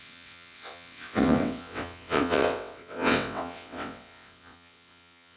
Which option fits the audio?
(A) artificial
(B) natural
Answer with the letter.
A